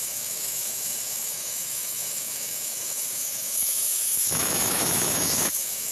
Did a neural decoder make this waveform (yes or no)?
yes